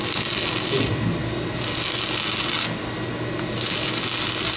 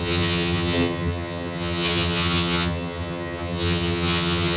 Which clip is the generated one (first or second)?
second